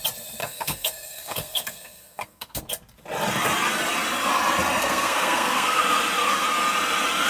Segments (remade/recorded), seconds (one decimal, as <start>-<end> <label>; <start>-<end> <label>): 0.0-0.4 recorded; 0.4-2.6 remade; 2.6-4.8 recorded; 4.8-5.8 remade; 5.8-7.3 recorded